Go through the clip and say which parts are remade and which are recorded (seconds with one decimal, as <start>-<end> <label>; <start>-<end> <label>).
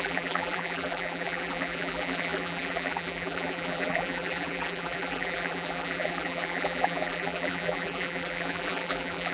0.0-9.3 remade